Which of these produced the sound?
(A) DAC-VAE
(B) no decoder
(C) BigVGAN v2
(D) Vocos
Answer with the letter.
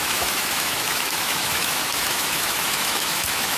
A